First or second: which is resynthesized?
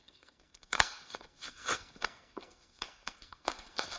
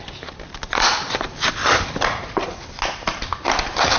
first